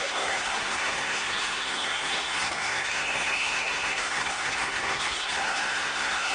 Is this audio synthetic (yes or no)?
yes